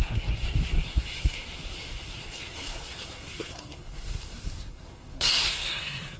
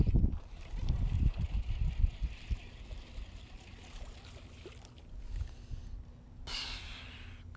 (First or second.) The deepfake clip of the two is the first